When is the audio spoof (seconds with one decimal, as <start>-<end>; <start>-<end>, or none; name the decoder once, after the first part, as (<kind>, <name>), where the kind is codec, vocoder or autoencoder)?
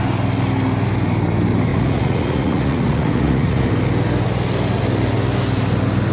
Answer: 1.7-3.7 (vocoder, Vocos)